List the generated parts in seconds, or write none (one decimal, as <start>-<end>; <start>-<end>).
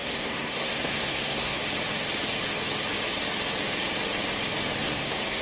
0.0-1.6; 4.8-5.4